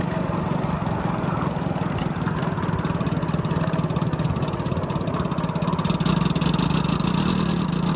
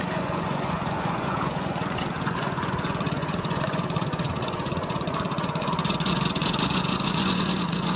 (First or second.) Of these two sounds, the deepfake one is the second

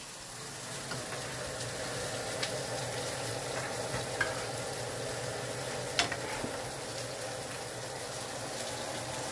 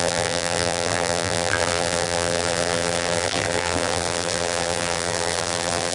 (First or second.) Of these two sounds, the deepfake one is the second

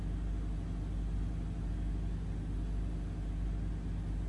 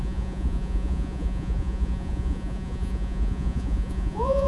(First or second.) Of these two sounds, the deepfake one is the second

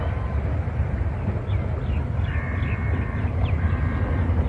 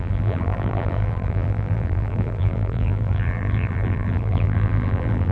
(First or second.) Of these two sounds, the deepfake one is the second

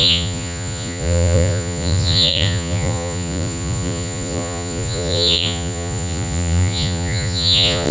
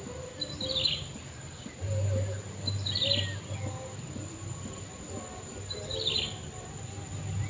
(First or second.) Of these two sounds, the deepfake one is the first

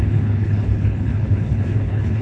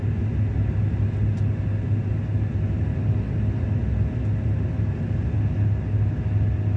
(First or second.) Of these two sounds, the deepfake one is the first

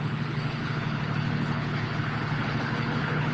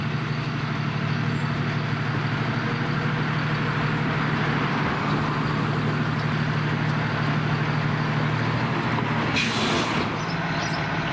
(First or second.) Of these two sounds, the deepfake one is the first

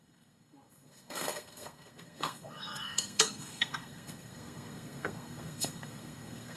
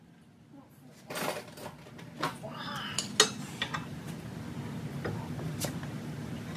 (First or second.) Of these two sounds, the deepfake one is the first